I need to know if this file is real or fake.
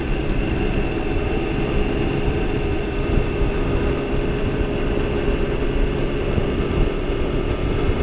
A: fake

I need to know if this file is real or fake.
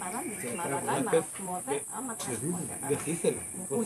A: fake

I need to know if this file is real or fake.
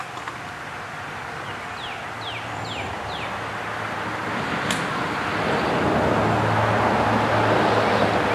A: real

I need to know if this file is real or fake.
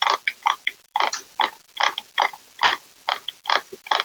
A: fake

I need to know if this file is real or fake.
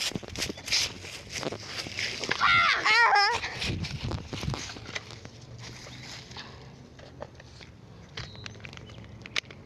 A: real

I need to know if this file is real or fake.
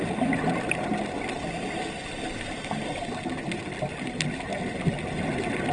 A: real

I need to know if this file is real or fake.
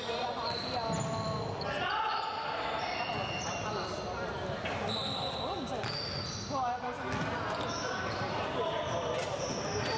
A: real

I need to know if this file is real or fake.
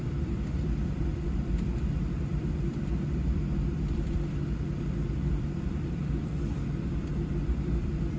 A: fake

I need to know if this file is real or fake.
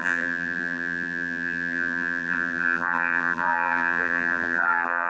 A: fake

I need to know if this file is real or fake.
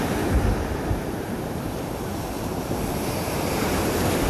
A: fake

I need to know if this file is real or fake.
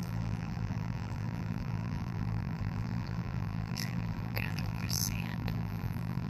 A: fake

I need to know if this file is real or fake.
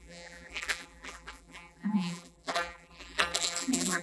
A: fake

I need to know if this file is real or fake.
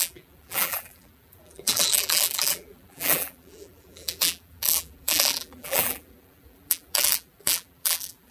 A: fake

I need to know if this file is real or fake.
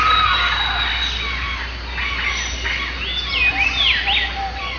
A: real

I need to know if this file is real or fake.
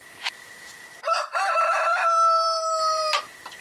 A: fake